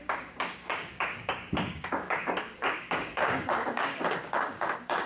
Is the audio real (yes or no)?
no